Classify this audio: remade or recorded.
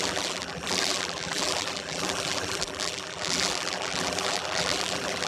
remade